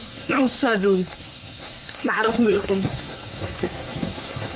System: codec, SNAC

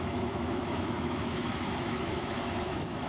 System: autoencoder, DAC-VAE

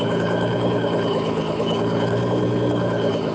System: codec, HILCodec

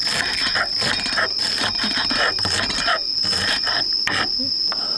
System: none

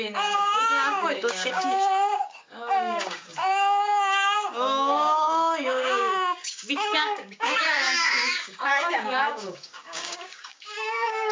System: codec, DAC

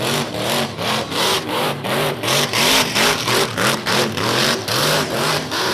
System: vocoder, BigVGAN v2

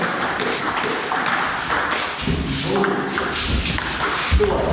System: none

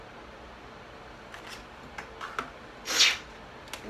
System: none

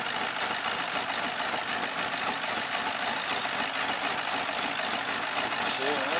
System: none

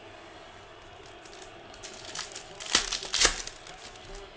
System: none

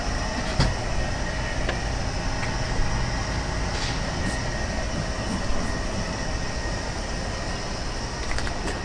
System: none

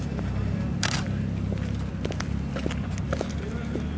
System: none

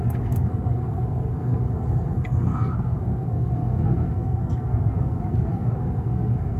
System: codec, SNAC